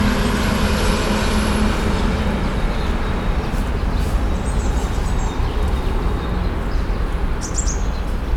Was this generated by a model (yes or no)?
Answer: no